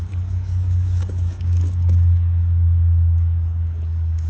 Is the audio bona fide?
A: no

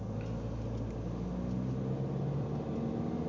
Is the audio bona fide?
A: yes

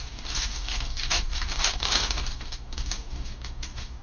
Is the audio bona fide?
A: no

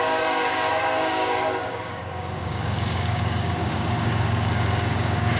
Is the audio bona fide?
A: no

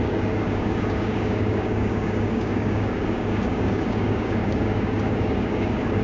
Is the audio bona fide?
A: no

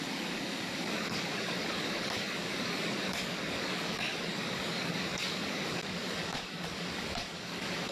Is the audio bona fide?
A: no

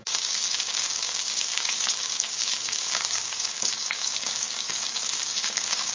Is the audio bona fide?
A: no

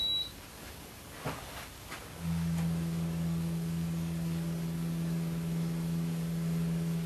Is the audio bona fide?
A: no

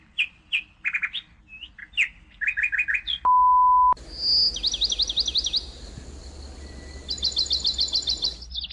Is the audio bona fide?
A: yes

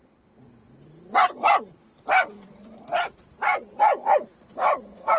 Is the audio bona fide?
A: yes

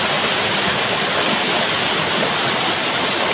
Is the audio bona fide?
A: yes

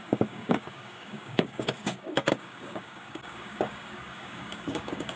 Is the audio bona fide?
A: no